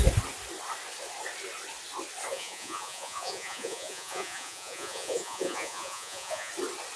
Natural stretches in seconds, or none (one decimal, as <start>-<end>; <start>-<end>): 0.0-2.3; 6.5-7.0